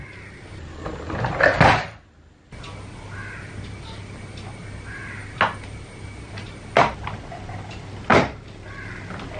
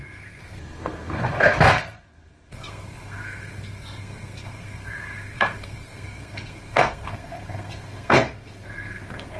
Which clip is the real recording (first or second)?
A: first